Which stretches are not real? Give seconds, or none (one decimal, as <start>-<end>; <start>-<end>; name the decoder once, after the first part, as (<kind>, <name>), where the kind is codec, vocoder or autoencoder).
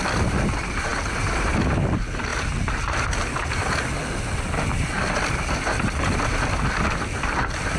none